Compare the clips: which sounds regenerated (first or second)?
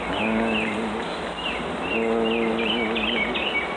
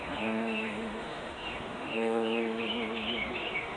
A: second